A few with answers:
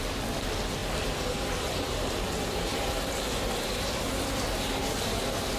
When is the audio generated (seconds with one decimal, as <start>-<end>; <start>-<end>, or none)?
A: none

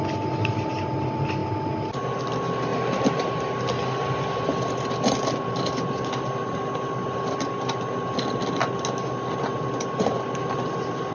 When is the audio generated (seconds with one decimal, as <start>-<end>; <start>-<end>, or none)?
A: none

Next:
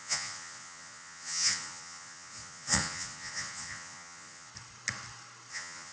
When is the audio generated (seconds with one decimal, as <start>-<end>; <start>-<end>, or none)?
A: 0.0-4.5; 5.5-5.9

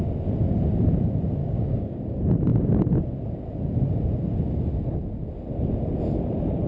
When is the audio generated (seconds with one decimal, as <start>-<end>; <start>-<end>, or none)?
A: 1.4-2.0

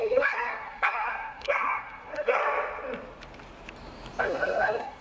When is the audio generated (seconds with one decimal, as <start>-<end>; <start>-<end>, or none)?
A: 0.0-2.4; 4.2-5.0

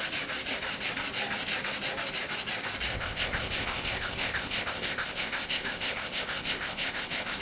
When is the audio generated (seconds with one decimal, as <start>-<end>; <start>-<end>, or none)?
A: 2.9-7.4